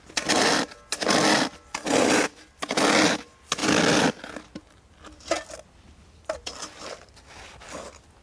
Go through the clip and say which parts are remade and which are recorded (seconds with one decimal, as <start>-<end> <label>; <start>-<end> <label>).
0.0-8.2 recorded